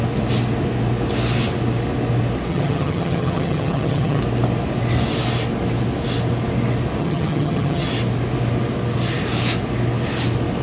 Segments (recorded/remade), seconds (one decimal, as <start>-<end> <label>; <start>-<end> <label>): 0.0-2.5 recorded; 2.5-4.2 remade; 4.2-7.0 recorded; 7.0-7.9 remade; 7.9-10.6 recorded